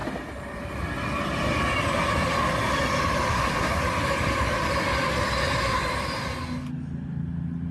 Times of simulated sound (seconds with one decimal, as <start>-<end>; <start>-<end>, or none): 3.3-3.8